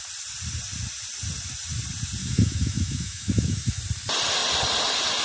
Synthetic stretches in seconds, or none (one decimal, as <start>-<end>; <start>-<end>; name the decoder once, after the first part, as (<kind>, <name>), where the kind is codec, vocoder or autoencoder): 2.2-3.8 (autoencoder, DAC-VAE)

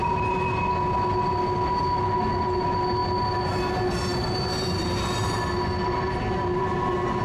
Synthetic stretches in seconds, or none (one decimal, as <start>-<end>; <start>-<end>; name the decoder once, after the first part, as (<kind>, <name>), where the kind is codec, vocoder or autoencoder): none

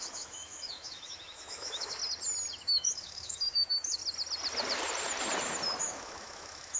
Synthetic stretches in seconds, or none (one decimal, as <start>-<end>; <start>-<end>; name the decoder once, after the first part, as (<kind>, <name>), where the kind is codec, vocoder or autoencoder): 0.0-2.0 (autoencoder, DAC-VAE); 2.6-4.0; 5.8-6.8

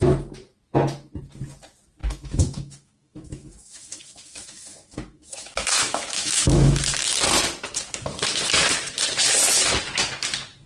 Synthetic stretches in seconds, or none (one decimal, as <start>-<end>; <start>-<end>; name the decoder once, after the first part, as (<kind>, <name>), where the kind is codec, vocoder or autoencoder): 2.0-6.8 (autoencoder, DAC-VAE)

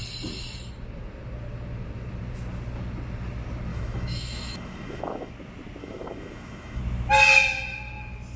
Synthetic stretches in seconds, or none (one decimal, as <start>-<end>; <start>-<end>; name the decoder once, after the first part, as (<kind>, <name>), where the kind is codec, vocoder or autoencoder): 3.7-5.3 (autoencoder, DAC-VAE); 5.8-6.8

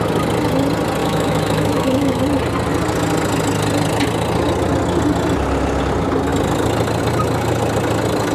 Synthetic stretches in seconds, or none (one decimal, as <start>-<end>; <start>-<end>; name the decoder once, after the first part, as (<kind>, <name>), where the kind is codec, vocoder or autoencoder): 1.0-2.2 (autoencoder, DAC-VAE)